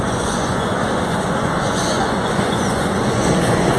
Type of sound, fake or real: fake